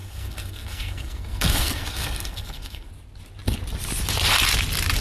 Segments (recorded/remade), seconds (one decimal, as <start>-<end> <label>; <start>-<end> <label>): 0.0-2.9 remade; 2.9-5.0 recorded